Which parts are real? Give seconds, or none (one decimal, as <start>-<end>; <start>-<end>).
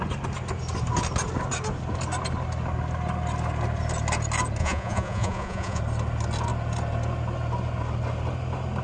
0.0-4.6; 5.8-8.8